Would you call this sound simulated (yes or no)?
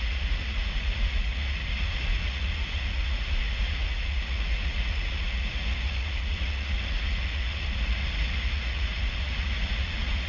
yes